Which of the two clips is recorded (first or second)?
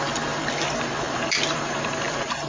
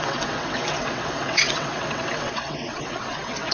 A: first